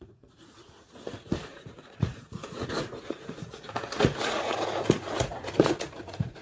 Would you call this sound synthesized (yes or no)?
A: yes